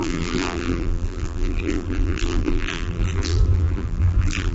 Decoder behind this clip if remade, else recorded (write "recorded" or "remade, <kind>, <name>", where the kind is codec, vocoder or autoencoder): remade, vocoder, BigVGAN v2